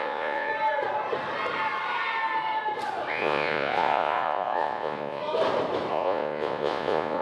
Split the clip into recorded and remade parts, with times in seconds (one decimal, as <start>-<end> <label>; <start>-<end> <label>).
0.0-0.5 remade; 0.5-3.1 recorded; 3.1-5.2 remade; 5.2-5.9 recorded; 5.9-7.2 remade